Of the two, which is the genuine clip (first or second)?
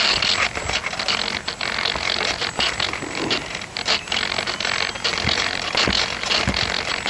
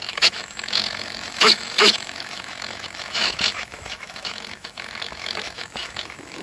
first